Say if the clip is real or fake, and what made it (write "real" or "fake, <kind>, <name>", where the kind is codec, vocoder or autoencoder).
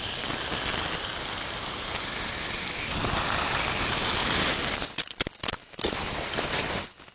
real